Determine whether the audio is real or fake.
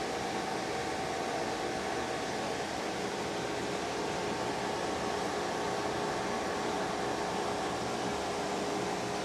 real